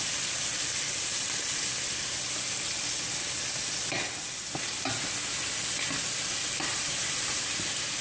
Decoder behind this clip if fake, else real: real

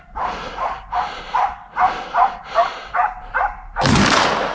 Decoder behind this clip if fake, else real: real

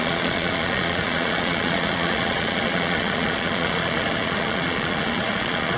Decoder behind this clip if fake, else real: fake, vocoder, Vocos